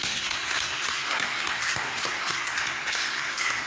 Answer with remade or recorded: remade